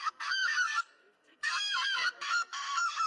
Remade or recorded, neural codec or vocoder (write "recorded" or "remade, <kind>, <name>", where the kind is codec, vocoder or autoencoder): remade, codec, SNAC